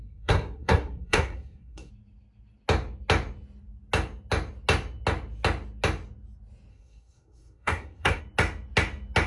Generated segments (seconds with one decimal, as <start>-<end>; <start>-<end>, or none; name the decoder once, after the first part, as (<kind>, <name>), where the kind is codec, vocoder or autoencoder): 0.0-1.9 (codec, SNAC); 6.7-8.2